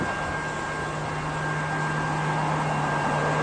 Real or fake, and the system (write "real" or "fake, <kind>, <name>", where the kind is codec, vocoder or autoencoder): real